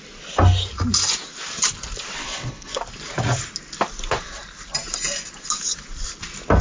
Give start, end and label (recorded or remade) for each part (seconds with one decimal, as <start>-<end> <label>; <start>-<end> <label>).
0.0-2.2 recorded; 2.2-2.8 remade; 2.8-6.6 recorded